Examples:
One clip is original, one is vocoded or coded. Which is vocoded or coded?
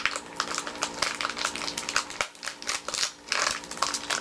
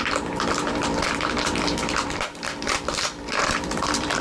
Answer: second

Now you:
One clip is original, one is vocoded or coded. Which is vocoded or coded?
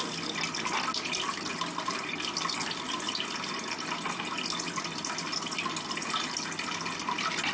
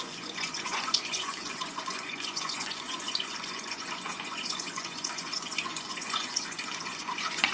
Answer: second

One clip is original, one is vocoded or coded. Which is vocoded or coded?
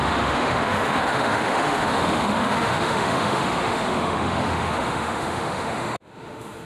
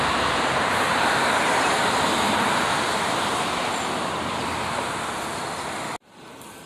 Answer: first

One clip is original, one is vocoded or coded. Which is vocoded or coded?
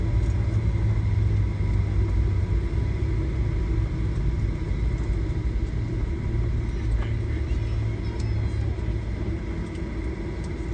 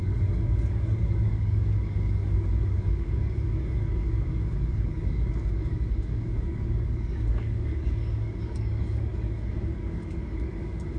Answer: second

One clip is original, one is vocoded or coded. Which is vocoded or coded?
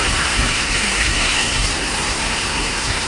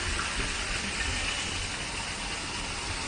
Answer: first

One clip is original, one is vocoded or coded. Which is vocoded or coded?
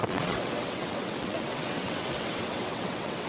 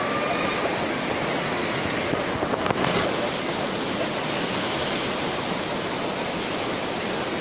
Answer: first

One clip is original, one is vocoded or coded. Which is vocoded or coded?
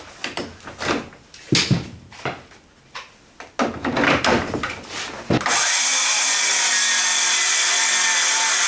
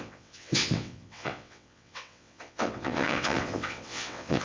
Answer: second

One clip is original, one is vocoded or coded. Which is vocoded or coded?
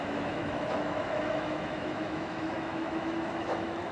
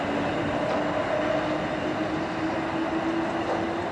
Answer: first